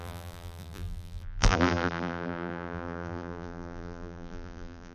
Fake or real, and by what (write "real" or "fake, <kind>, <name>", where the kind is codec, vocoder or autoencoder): fake, vocoder, BigVGAN v2